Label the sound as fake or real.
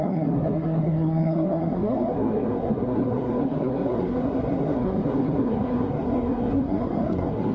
fake